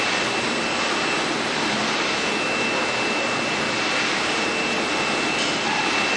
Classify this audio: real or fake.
real